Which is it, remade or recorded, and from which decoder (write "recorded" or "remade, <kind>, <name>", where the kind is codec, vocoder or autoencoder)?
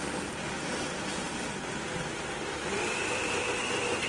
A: recorded